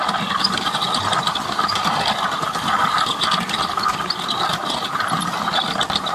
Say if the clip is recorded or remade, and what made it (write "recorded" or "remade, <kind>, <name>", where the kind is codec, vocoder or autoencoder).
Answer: recorded